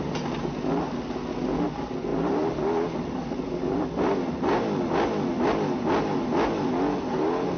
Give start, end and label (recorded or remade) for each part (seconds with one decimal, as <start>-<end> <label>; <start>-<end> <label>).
0.0-7.6 recorded